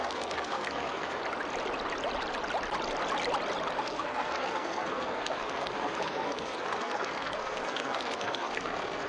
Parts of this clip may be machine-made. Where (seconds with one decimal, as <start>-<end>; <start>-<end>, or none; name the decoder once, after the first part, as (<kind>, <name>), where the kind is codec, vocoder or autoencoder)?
0.0-1.2 (codec, SNAC); 3.8-9.1